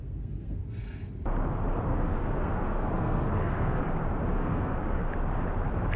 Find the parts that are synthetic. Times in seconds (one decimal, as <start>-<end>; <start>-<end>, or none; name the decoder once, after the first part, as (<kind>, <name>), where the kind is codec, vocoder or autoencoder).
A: 0.0-0.6 (codec, SNAC); 1.9-3.8; 4.3-5.0